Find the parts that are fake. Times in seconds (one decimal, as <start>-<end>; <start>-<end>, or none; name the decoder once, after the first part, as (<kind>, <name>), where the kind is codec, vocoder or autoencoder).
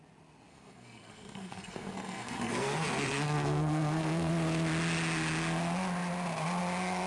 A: 0.5-4.3 (codec, SNAC)